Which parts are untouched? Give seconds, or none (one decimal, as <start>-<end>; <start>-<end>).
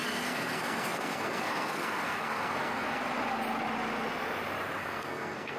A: 3.0-4.8